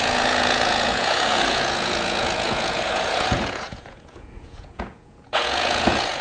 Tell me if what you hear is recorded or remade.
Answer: remade